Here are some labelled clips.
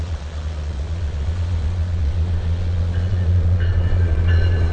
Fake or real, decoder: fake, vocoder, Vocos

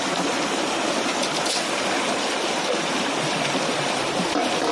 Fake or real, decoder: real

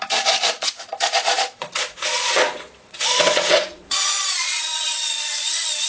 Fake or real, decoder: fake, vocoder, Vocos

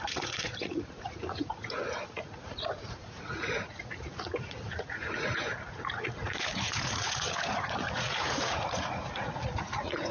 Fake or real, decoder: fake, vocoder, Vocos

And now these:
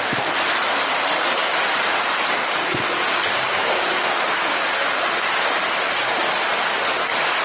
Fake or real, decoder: real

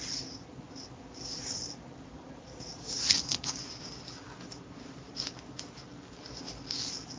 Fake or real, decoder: real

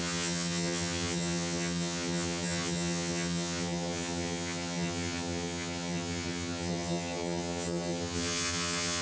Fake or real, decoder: fake, vocoder, HiFi-GAN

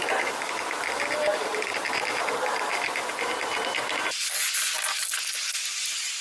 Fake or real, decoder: real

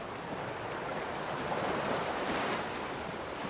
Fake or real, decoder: real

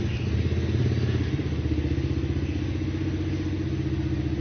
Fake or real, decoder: real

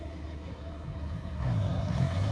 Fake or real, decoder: fake, codec, SNAC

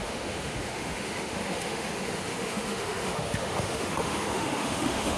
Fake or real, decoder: fake, autoencoder, DAC-VAE